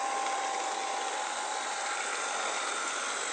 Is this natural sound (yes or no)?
yes